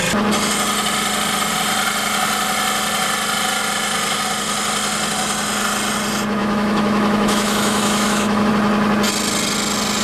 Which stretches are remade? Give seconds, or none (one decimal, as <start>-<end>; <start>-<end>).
6.4-8.5